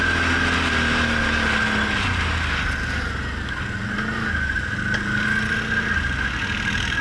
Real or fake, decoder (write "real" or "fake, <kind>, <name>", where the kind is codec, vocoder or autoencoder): real